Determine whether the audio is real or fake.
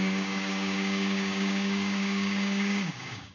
fake